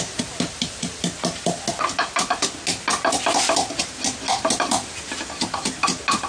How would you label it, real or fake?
real